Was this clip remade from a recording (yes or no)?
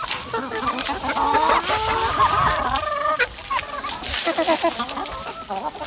no